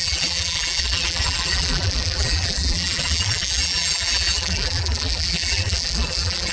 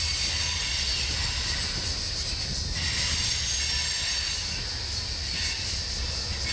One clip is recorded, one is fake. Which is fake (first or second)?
first